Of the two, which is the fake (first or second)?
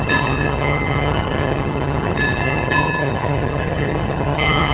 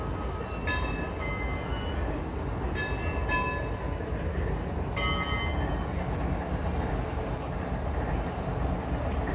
first